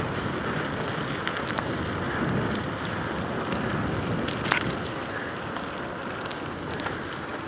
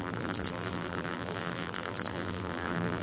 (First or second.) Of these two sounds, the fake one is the second